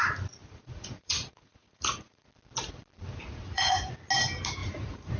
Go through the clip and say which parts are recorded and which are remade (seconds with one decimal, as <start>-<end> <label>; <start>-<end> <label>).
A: 0.0-0.4 recorded; 0.4-2.3 remade; 2.3-3.1 recorded; 3.1-3.9 remade; 3.9-4.6 recorded; 4.6-5.2 remade